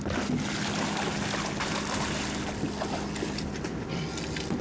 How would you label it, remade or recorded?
recorded